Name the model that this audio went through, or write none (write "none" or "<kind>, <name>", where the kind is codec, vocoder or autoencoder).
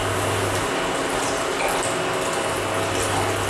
none